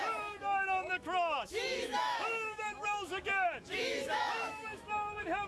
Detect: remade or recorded remade